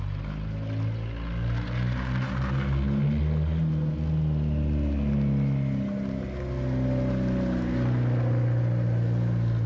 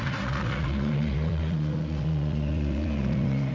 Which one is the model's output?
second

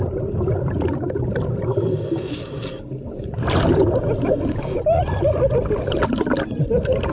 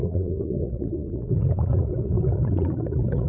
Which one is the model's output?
second